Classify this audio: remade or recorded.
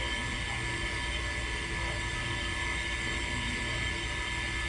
recorded